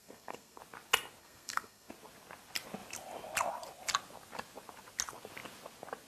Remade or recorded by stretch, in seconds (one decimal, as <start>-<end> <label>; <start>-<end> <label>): 0.0-0.6 remade; 0.6-1.2 recorded; 1.2-1.9 remade; 1.9-6.1 recorded